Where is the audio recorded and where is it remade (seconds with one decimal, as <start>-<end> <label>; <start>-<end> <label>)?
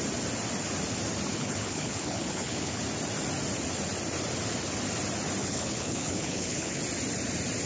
0.0-1.3 recorded; 1.3-2.8 remade; 2.8-5.4 recorded; 5.4-6.8 remade; 6.8-7.7 recorded